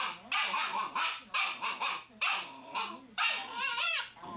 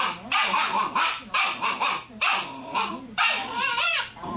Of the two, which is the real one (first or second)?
first